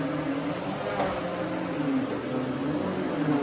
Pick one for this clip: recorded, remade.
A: recorded